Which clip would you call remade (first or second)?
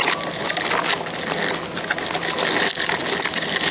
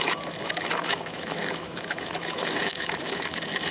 second